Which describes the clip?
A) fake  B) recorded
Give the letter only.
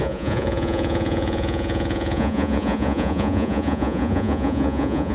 A